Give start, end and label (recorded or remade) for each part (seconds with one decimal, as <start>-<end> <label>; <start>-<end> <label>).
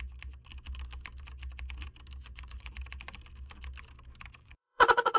0.0-2.2 recorded; 2.2-2.7 remade; 2.7-4.4 recorded; 4.4-5.2 remade